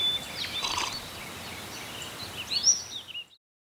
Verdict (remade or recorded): recorded